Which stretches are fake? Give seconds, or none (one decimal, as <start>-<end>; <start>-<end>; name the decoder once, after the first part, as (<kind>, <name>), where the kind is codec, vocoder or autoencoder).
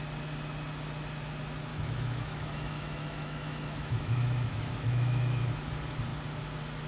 1.7-5.4 (autoencoder, DAC-VAE)